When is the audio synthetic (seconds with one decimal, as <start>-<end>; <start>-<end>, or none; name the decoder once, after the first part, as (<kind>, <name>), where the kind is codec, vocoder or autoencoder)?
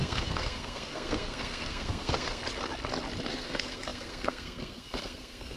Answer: 0.0-2.4 (codec, SNAC); 3.3-5.6